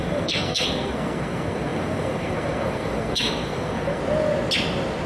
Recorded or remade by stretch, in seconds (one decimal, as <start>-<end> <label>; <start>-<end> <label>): 0.0-4.0 remade; 4.0-5.1 recorded